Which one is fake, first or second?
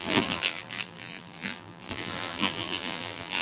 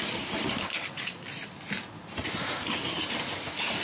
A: first